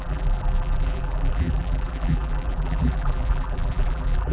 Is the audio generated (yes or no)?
yes